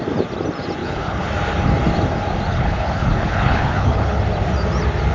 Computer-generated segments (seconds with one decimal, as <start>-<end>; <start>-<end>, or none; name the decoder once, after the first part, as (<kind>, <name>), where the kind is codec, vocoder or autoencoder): 0.8-1.3 (codec, HILCodec); 2.5-4.2